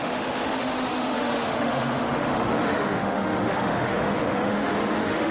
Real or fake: fake